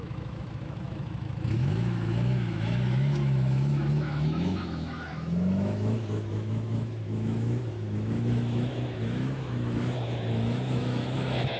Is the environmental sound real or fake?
fake